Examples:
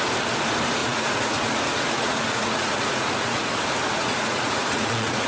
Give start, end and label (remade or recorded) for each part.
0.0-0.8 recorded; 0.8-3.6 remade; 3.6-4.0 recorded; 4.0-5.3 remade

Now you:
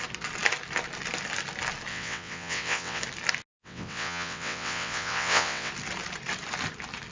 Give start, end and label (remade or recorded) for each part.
0.0-1.9 recorded; 1.9-3.0 remade; 3.0-3.6 recorded; 3.6-5.7 remade; 5.7-7.1 recorded

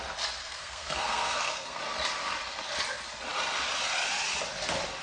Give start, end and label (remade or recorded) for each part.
0.0-0.4 recorded; 0.4-1.8 remade; 1.8-5.0 recorded

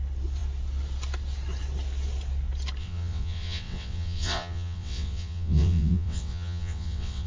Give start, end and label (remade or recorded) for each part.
0.0-2.8 recorded; 2.8-7.3 remade

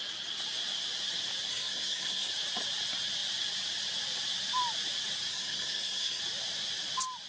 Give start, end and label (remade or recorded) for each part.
0.0-1.5 recorded; 1.5-2.3 remade; 2.3-5.3 recorded; 5.3-6.2 remade; 6.2-7.3 recorded